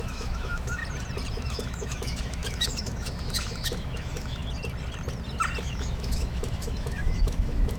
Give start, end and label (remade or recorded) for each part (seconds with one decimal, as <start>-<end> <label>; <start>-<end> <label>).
0.0-0.8 remade; 0.8-1.3 recorded; 1.3-4.4 remade; 4.4-5.6 recorded; 5.6-7.8 remade